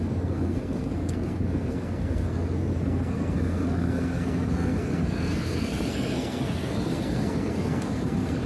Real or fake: fake